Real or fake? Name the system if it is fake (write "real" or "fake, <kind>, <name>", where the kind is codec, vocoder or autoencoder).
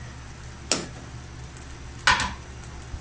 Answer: real